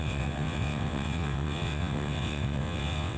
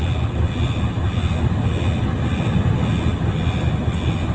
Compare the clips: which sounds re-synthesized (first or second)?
first